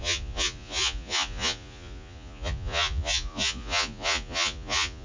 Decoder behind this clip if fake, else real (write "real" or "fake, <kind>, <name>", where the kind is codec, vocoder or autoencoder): fake, vocoder, Vocos